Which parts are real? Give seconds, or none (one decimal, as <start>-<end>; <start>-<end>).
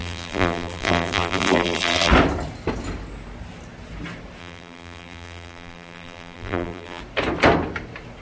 2.1-4.4; 7.0-8.2